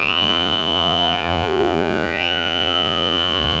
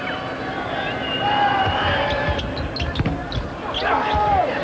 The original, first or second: second